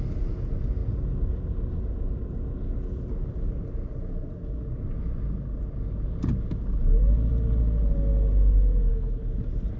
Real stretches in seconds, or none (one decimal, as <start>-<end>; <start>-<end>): 0.0-9.8